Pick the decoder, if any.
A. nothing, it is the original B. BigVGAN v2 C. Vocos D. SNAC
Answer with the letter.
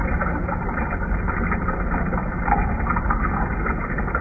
A